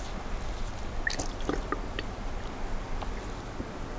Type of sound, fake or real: real